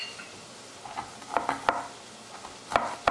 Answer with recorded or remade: recorded